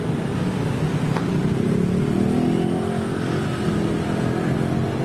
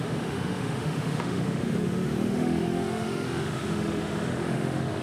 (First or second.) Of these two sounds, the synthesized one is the second